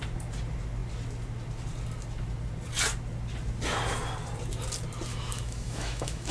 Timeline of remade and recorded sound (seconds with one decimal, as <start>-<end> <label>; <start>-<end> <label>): 0.0-5.1 recorded; 5.1-6.3 remade